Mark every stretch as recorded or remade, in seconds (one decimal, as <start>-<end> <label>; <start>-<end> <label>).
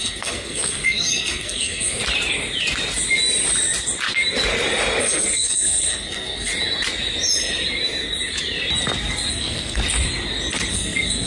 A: 0.0-2.0 remade; 2.0-5.0 recorded; 5.0-6.5 remade; 6.5-9.3 recorded; 9.3-9.8 remade; 9.8-10.7 recorded; 10.7-11.3 remade